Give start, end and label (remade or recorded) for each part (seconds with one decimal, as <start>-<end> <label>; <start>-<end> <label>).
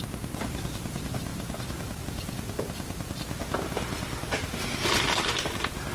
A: 0.0-5.9 recorded